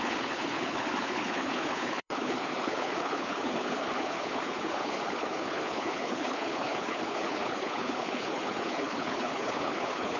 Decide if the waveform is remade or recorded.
remade